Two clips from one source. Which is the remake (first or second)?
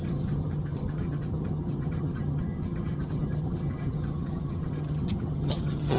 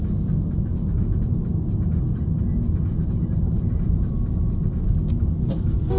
first